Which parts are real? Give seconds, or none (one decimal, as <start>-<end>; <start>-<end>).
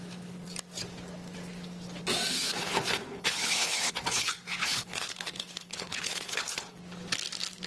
0.0-2.3; 6.8-7.7